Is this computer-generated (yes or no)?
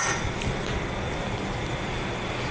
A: yes